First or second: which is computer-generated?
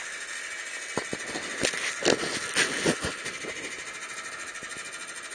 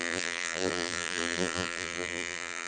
second